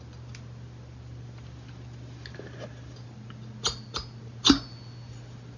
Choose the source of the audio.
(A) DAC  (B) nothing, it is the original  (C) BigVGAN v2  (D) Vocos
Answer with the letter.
B